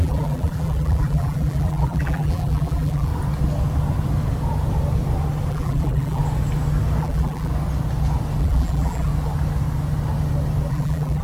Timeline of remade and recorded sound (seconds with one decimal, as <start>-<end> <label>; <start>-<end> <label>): 0.0-3.1 remade; 3.1-5.5 recorded; 5.5-6.2 remade; 6.2-7.0 recorded; 7.0-7.5 remade; 7.5-8.4 recorded; 8.4-9.1 remade; 9.1-10.7 recorded; 10.7-11.2 remade

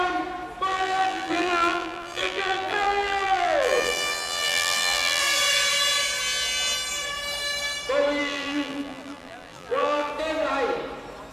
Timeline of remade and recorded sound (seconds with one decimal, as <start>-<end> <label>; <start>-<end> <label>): 0.0-0.7 recorded; 0.7-5.2 remade; 5.2-8.2 recorded; 8.2-10.1 remade; 10.1-11.3 recorded

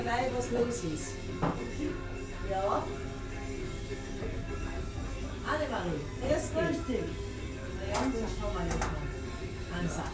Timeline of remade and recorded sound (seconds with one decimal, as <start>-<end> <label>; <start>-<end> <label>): 0.0-0.6 remade; 0.6-9.4 recorded; 9.4-10.1 remade

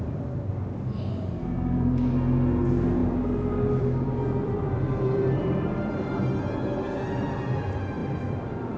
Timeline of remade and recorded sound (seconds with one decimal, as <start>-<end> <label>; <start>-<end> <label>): 0.0-3.0 recorded; 3.0-6.2 remade; 6.2-8.0 recorded; 8.0-8.8 remade